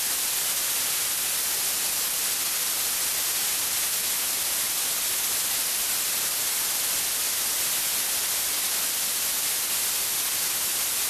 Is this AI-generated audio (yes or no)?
no